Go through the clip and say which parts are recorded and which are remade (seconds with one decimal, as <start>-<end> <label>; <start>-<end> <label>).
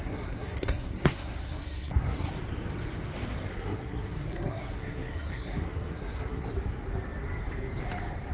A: 0.0-2.3 remade; 2.3-3.5 recorded; 3.5-6.5 remade; 6.5-8.3 recorded